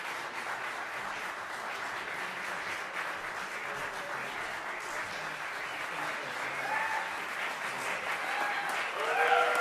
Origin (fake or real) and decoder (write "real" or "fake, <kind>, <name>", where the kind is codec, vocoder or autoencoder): real